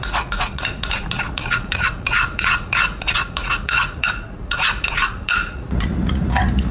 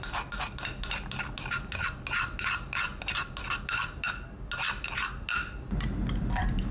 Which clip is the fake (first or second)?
first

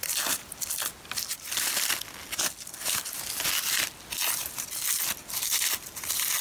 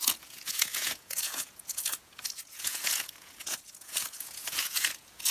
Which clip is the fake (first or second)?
second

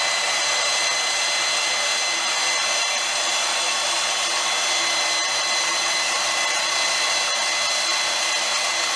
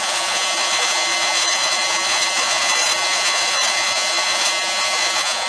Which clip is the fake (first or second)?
second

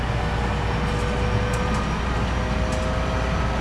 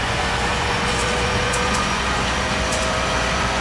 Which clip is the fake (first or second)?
second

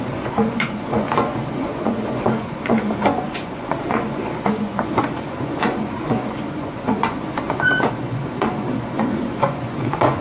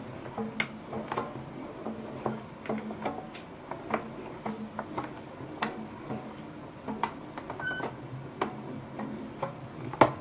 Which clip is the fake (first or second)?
first